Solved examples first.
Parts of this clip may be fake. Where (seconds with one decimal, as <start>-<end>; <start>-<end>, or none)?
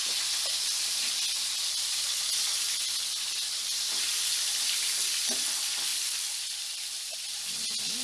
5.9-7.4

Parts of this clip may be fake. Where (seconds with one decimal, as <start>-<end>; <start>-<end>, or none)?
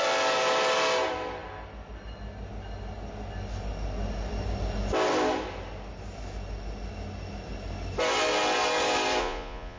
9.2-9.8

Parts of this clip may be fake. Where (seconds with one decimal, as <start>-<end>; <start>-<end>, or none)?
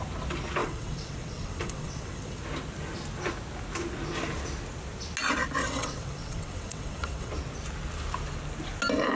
0.6-2.4; 5.6-7.3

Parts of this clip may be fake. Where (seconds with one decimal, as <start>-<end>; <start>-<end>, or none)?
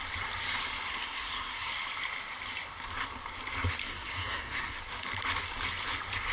0.9-1.7; 3.8-4.8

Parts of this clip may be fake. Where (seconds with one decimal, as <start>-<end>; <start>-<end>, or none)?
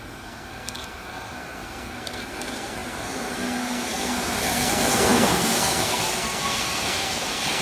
0.0-7.6